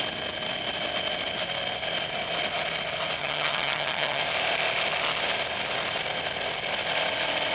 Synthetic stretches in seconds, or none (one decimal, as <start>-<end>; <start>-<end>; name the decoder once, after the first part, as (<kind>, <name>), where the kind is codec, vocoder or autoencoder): 3.2-4.2 (vocoder, HiFi-GAN)